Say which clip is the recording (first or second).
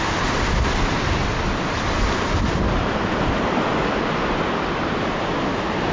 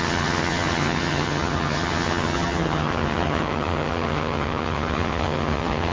first